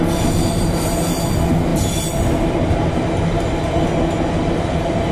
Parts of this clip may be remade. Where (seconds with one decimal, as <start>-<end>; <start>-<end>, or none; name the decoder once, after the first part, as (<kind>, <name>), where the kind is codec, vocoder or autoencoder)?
none